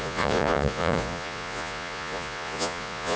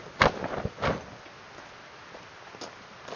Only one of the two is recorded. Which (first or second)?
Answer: second